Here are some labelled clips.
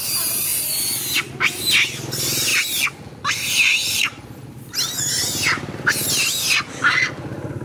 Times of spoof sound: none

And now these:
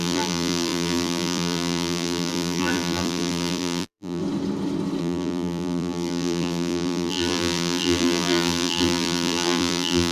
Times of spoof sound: 0.0-4.2 (vocoder, BigVGAN v2); 5.0-10.1

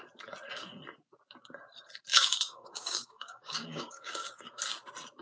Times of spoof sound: 2.1-4.6 (codec, DAC)

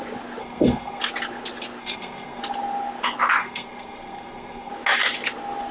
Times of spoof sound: 0.4-1.0 (codec, SNAC); 1.8-2.4; 3.4-4.7

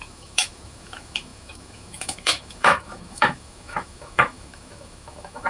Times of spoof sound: 0.0-5.5 (autoencoder, DAC-VAE)

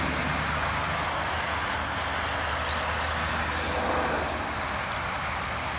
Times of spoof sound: none